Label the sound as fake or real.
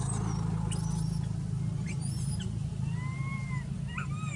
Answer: real